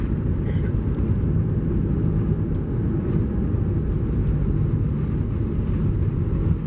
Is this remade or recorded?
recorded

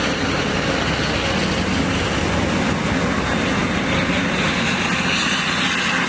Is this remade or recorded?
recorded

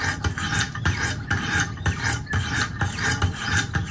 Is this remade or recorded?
recorded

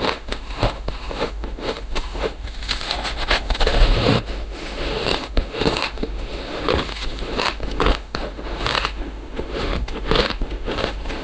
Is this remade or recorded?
remade